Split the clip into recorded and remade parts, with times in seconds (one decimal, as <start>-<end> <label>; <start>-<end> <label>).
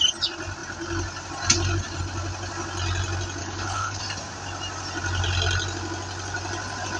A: 0.0-3.4 recorded; 3.4-4.0 remade; 4.0-7.0 recorded